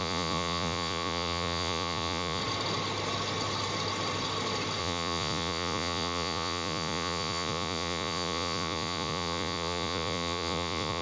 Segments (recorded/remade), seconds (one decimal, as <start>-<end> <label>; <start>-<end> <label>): 0.0-2.4 remade; 2.4-4.8 recorded; 4.8-11.0 remade